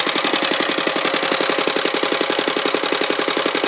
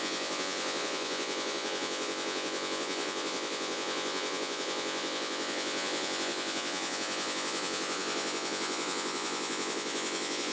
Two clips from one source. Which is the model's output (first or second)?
second